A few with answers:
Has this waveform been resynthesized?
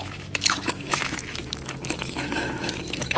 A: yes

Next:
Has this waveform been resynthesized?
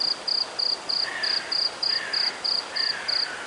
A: no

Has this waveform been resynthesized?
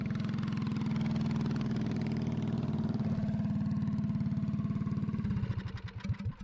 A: no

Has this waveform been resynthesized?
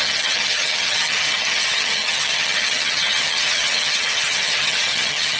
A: yes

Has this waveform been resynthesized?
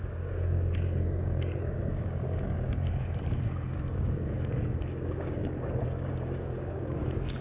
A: yes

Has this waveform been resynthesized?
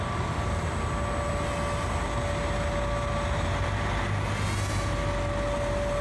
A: no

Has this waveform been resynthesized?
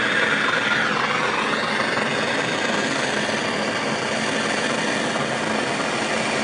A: no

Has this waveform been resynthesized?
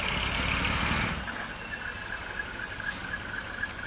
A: no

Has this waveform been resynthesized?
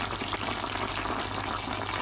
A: no